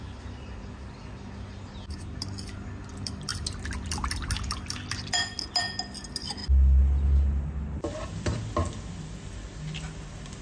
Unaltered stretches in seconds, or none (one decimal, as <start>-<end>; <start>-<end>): 0.0-10.4